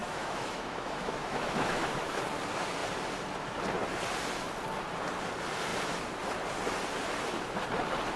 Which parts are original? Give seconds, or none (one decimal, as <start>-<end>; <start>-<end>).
2.2-8.2